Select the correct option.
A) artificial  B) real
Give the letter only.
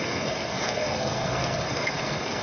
A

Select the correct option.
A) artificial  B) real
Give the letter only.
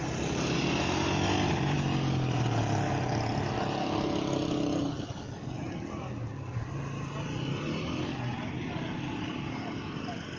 B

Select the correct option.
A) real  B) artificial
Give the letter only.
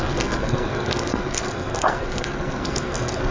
B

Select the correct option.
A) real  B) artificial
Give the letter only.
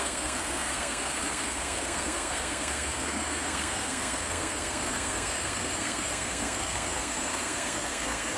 B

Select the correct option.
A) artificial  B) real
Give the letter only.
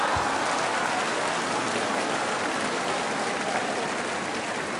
B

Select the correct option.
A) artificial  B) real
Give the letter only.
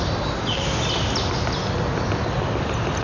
B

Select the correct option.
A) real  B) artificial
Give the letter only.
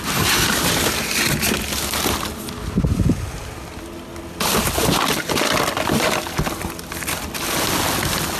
A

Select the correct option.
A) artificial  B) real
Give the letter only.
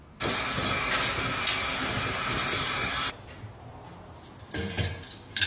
B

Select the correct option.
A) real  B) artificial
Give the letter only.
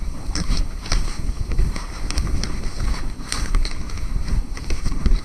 B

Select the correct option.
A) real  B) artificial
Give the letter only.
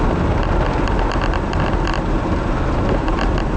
A